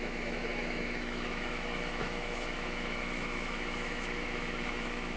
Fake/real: fake